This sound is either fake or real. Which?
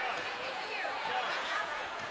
fake